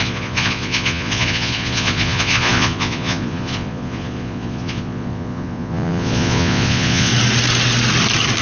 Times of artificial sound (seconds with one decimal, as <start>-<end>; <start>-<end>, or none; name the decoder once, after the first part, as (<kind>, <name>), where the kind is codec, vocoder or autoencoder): 0.0-7.1 (vocoder, Vocos)